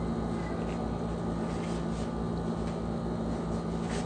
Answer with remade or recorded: recorded